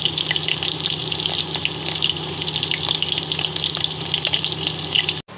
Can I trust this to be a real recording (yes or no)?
yes